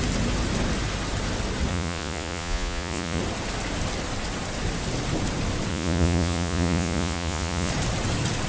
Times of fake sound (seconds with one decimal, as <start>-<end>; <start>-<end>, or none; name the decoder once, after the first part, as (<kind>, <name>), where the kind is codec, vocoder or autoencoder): 1.7-3.2 (vocoder, Vocos); 5.7-7.7